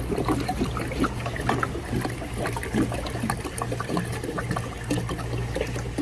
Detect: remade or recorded recorded